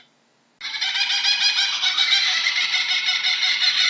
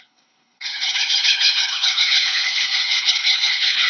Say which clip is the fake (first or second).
second